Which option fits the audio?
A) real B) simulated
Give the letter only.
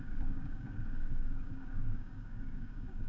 B